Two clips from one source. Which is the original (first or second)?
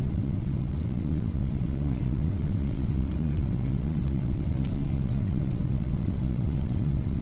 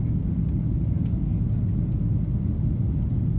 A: second